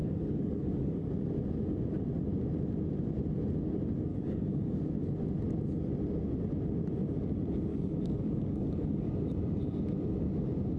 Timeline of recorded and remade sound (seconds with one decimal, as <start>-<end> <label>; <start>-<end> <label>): 0.0-1.1 remade; 1.1-4.1 recorded; 4.1-4.8 remade; 4.8-7.7 recorded; 7.7-9.1 remade; 9.1-10.8 recorded